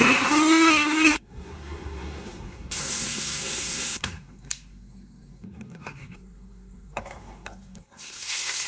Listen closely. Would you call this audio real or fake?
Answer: fake